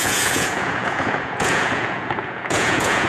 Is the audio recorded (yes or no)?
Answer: no